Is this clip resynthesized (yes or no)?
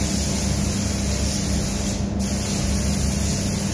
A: no